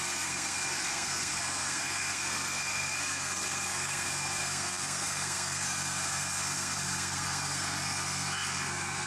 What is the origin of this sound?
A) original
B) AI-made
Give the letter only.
B